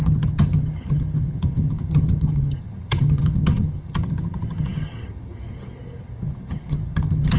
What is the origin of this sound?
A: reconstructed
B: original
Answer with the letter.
A